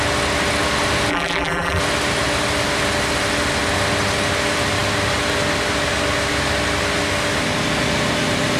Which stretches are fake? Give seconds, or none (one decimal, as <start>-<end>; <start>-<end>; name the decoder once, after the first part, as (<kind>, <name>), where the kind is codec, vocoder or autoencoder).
1.1-1.8 (vocoder, BigVGAN v2)